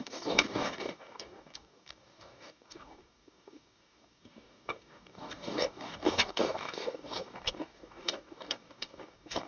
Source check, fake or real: fake